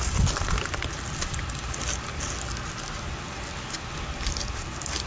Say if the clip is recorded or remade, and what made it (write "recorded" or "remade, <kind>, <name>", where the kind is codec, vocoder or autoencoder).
recorded